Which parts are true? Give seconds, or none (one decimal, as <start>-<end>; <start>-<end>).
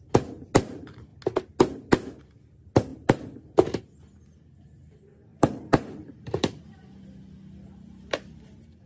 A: 0.0-5.3; 6.6-8.9